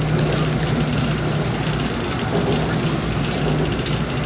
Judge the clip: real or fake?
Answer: real